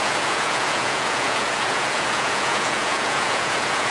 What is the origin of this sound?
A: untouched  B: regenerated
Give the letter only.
B